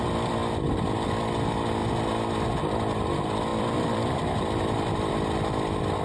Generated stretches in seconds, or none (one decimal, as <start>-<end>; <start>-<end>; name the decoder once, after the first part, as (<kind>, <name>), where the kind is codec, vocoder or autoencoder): 0.4-1.3 (vocoder, BigVGAN v2); 3.5-5.1